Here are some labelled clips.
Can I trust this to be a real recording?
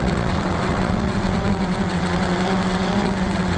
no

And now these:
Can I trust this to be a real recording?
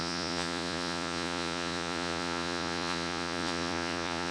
no